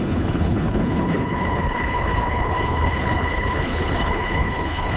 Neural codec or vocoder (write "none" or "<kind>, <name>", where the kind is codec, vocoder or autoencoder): codec, HILCodec